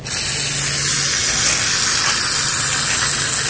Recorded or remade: recorded